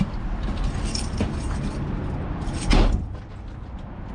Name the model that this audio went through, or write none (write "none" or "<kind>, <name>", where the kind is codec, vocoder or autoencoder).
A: none